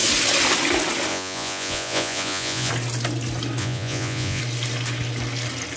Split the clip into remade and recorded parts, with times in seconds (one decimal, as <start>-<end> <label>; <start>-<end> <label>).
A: 0.0-1.1 recorded; 1.1-2.7 remade; 2.7-3.6 recorded; 3.6-4.4 remade; 4.4-5.8 recorded